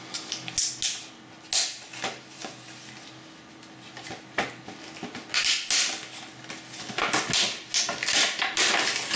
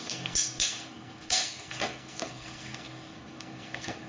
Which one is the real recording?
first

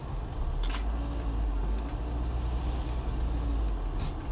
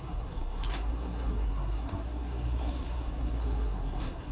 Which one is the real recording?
first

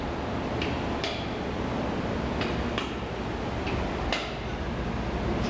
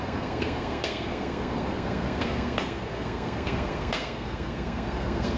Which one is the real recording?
first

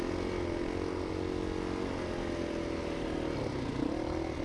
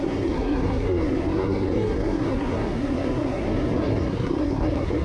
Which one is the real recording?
first